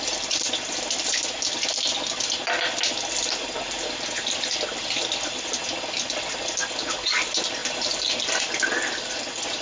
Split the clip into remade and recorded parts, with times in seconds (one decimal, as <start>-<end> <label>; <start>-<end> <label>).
0.0-7.6 recorded; 7.6-8.4 remade; 8.4-9.6 recorded